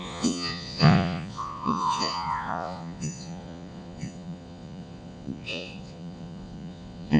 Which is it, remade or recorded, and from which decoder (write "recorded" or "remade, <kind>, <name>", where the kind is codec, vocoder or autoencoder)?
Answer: remade, vocoder, Vocos